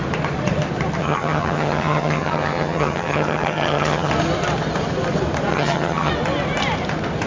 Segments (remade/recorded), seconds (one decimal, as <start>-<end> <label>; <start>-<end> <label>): 0.0-1.0 recorded; 1.0-4.1 remade; 4.1-5.5 recorded; 5.5-6.1 remade; 6.1-7.3 recorded

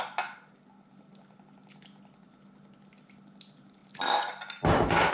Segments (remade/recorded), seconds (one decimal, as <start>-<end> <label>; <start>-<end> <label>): 0.0-5.1 recorded

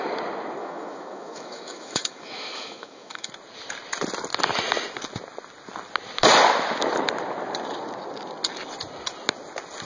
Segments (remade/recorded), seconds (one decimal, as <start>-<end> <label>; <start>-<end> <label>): 0.0-0.6 recorded; 0.6-3.3 remade; 3.3-9.8 recorded

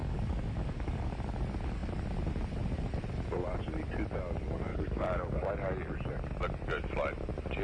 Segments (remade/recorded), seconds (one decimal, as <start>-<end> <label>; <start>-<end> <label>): 0.0-1.1 remade; 1.1-4.7 recorded; 4.7-5.5 remade; 5.5-7.6 recorded